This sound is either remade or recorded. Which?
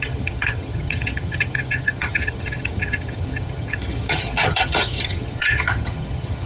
remade